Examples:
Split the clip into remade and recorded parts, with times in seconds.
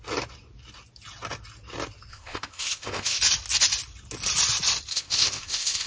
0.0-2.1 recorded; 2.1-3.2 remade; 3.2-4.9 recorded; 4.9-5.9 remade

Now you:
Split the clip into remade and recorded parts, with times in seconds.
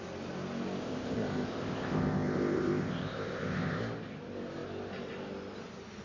0.0-0.8 recorded; 0.8-3.8 remade; 3.8-6.0 recorded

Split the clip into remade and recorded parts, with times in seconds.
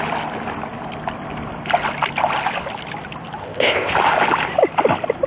0.0-3.4 recorded; 3.4-3.9 remade; 3.9-5.3 recorded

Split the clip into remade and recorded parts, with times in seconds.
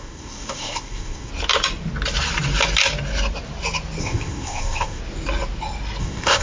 0.0-1.3 remade; 1.3-4.0 recorded; 4.0-5.0 remade; 5.0-6.0 recorded; 6.0-6.4 remade